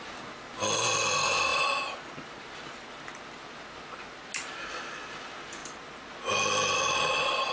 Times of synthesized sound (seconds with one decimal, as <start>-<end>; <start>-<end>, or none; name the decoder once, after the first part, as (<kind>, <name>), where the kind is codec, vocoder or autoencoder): none